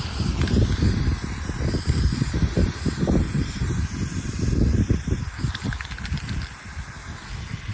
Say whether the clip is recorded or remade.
recorded